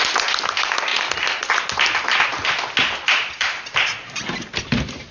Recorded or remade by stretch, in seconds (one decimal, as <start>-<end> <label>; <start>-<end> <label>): 0.0-0.9 recorded; 0.9-1.6 remade; 1.6-5.1 recorded